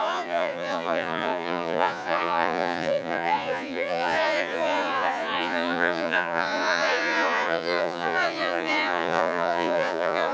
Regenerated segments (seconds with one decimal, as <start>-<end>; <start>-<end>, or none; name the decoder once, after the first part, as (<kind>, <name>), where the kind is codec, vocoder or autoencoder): 0.0-10.3 (vocoder, Vocos)